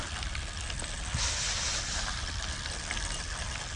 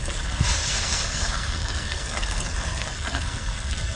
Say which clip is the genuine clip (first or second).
first